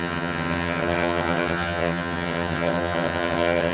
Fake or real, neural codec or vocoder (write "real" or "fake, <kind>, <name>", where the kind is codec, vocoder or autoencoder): fake, vocoder, HiFi-GAN